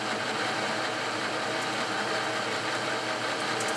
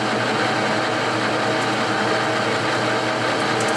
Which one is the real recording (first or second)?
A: second